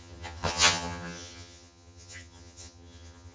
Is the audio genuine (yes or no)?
no